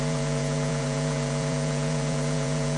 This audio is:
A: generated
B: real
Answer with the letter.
A